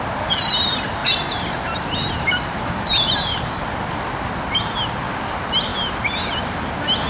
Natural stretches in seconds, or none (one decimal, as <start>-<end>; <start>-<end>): 0.0-1.0; 3.1-7.1